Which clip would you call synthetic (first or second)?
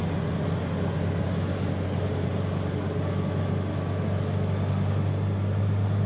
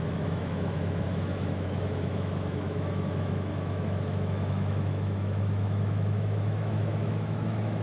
second